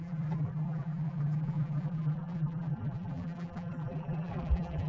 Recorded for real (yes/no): no